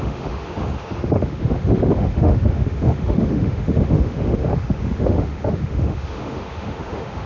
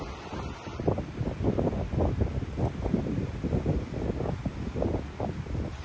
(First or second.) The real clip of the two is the second